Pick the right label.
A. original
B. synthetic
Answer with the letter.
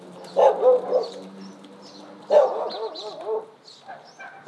A